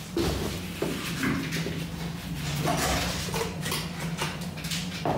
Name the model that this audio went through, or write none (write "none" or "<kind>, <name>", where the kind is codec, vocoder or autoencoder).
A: none